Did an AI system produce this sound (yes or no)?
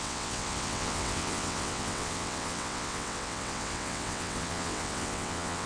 yes